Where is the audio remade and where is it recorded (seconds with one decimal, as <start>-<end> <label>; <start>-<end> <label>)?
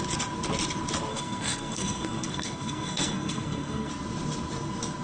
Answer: 0.0-1.1 recorded; 1.1-3.9 remade; 3.9-5.0 recorded